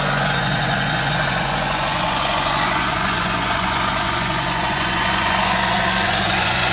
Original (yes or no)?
no